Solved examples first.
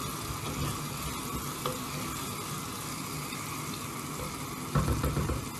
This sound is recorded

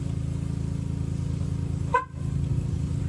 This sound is recorded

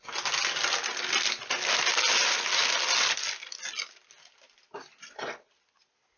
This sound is recorded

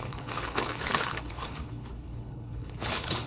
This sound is remade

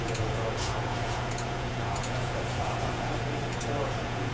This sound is remade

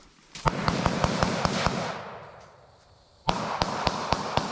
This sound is remade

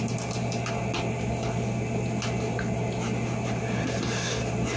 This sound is recorded